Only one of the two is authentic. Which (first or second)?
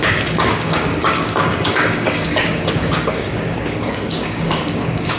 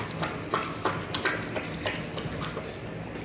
second